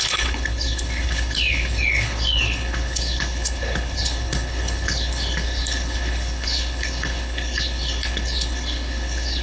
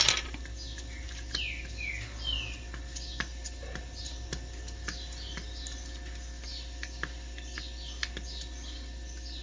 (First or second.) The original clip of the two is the second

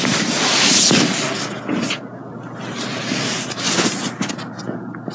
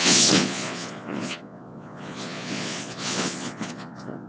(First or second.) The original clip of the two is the first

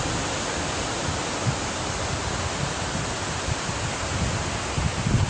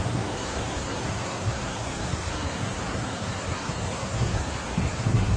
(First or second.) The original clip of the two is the first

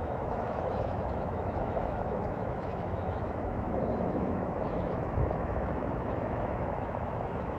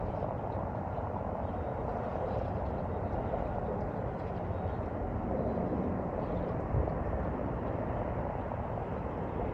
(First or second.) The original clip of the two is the second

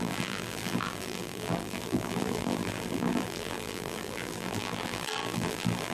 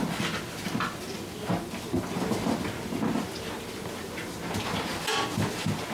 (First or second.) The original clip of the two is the second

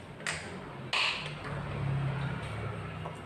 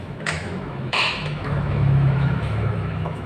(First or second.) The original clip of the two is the first